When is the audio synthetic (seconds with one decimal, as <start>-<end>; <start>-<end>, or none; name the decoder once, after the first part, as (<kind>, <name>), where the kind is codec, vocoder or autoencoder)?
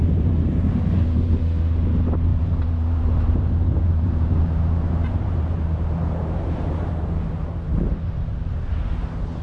0.0-1.4 (vocoder, BigVGAN v2); 2.3-7.3; 8.3-8.9